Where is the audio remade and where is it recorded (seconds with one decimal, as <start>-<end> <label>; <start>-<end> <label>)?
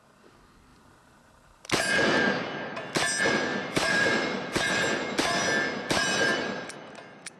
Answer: 0.0-3.5 recorded; 3.5-4.6 remade; 4.6-7.4 recorded